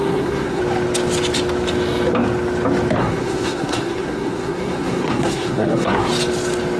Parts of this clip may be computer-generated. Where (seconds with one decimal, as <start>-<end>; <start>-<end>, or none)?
0.0-0.6; 3.0-6.1